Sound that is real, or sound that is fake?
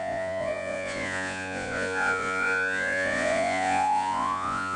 fake